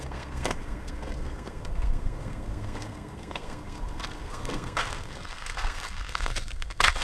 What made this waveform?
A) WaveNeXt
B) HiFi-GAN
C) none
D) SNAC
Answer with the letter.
D